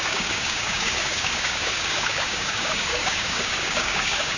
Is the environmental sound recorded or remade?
remade